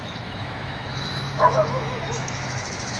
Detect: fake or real fake